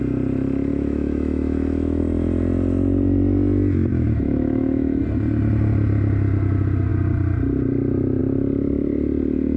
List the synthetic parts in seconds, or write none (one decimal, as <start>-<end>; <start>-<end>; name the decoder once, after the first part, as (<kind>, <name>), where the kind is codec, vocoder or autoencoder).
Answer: 0.7-2.0 (autoencoder, DAC-VAE); 3.9-5.0